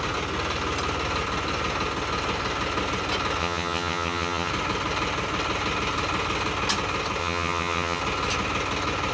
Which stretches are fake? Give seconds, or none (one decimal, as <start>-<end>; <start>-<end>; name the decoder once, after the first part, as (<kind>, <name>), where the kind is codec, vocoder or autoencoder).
3.4-4.5 (vocoder, HiFi-GAN); 7.2-8.0